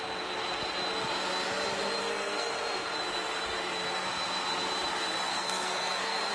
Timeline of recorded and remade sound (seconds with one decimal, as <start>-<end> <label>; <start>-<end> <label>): 0.0-2.0 recorded; 2.0-2.5 remade; 2.5-5.3 recorded; 5.3-6.3 remade

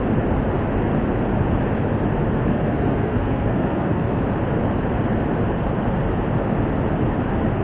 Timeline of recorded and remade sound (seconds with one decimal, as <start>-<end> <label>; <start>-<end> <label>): 0.0-2.5 recorded; 2.5-4.2 remade; 4.2-7.6 recorded

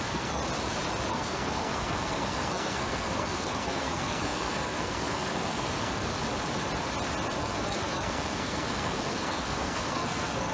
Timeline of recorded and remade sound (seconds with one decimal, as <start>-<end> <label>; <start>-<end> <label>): 0.0-0.4 remade; 0.4-1.1 recorded; 1.1-6.1 remade; 6.1-7.4 recorded; 7.4-10.5 remade

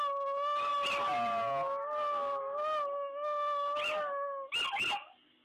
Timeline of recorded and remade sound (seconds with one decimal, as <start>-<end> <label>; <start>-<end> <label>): 0.0-5.4 recorded

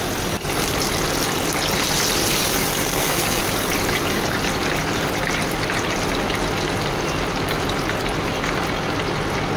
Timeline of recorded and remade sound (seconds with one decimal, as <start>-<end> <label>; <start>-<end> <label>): 0.0-2.8 recorded; 2.8-3.4 remade; 3.4-9.6 recorded

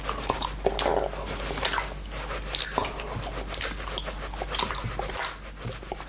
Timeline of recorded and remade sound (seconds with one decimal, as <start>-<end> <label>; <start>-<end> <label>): 0.0-6.1 recorded

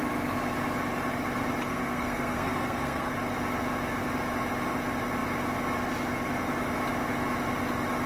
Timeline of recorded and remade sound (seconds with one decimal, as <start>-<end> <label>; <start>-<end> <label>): 0.0-1.7 recorded; 1.7-3.1 remade; 3.1-8.1 recorded

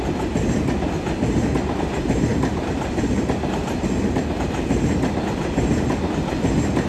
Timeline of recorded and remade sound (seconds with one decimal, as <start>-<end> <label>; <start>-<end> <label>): 0.0-6.9 recorded